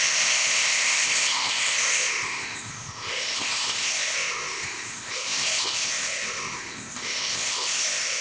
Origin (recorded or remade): remade